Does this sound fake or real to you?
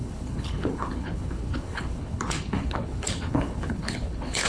fake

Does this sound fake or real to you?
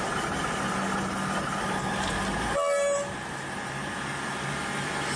real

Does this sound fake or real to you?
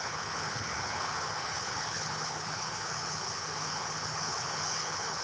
fake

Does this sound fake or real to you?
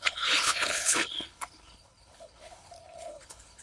fake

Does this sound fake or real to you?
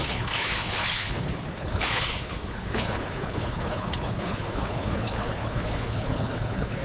fake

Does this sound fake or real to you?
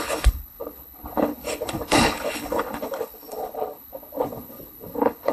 fake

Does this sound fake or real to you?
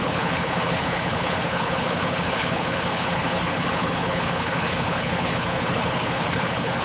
fake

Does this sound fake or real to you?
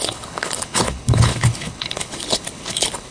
fake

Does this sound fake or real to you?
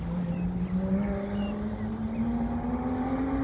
real